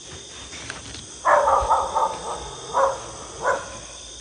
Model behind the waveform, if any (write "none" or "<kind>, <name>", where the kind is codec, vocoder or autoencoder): none